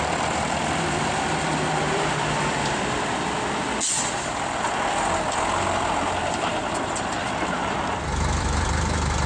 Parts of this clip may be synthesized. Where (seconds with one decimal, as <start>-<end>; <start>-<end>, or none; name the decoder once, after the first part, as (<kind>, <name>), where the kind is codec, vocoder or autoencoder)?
0.0-6.5 (vocoder, BigVGAN v2); 8.4-9.3